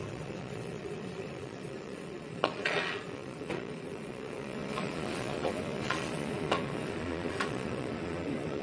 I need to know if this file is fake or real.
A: fake